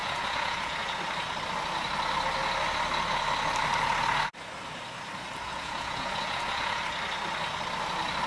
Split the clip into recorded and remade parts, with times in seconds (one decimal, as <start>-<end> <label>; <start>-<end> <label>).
0.0-1.0 remade; 1.0-5.5 recorded; 5.5-6.8 remade; 6.8-8.3 recorded